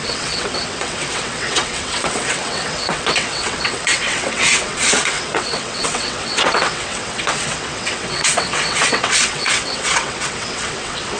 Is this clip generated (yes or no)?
yes